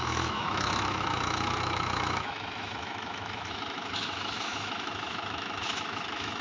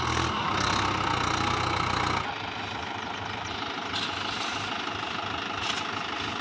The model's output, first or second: first